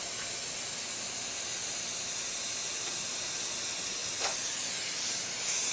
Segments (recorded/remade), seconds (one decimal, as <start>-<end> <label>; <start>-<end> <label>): 0.0-5.7 recorded